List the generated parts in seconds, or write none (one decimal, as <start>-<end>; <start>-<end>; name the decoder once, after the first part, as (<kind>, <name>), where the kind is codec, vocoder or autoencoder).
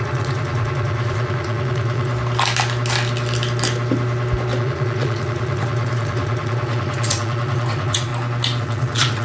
0.0-2.1 (vocoder, Vocos); 4.6-8.1; 8.6-9.2